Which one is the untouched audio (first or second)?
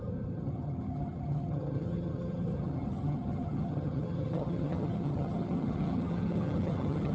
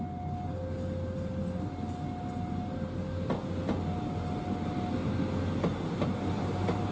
second